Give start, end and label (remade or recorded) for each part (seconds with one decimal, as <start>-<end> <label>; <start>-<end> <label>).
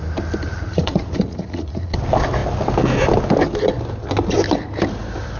0.0-0.5 recorded; 0.5-2.0 remade; 2.0-5.4 recorded